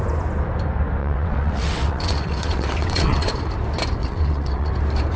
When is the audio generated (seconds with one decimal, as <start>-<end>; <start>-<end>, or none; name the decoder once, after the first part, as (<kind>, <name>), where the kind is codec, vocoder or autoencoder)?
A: 1.0-3.3 (vocoder, WaveNeXt); 4.0-4.7